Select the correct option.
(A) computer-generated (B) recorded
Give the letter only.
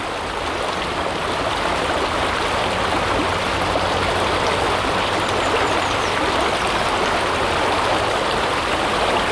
B